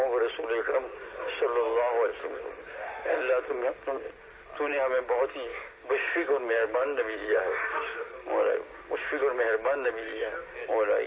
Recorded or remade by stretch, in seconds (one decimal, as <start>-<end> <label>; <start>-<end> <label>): 0.0-5.5 recorded; 5.5-8.8 remade; 8.8-11.1 recorded